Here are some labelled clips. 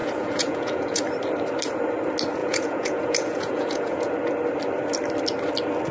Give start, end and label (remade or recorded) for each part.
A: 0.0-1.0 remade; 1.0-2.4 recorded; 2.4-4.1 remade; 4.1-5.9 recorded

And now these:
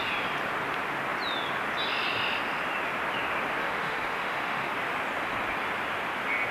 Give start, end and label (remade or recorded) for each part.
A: 0.0-3.6 recorded; 3.6-4.7 remade; 4.7-6.5 recorded

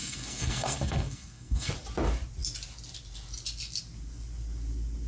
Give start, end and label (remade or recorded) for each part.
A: 0.0-1.7 remade; 1.7-5.1 recorded

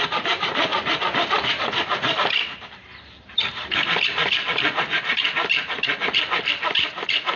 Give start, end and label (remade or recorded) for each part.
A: 0.0-7.4 recorded

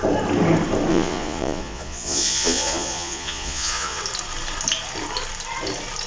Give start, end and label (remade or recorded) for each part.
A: 0.0-0.9 recorded; 0.9-4.0 remade; 4.0-6.1 recorded

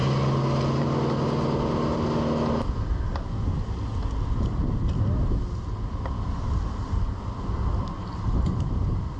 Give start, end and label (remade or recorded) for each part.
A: 0.0-9.2 recorded

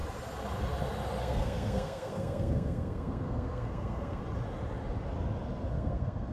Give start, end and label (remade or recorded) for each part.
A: 0.0-1.2 recorded; 1.2-4.2 remade; 4.2-5.7 recorded; 5.7-6.3 remade